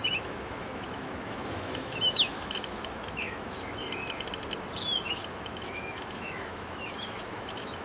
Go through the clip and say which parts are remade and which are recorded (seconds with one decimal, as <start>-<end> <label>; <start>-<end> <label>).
0.0-3.8 remade; 3.8-5.1 recorded; 5.1-7.8 remade